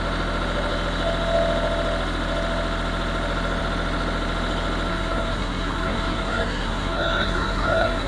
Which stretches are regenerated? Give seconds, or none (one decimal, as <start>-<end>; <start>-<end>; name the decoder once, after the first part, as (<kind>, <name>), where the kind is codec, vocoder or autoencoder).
4.9-8.1 (codec, SNAC)